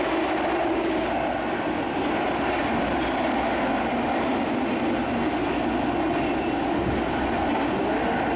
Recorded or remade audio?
recorded